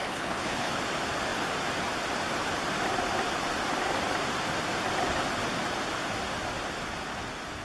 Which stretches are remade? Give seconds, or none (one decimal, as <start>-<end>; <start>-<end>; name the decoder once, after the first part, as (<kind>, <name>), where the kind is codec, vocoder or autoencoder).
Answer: 0.0-0.7 (codec, HILCodec)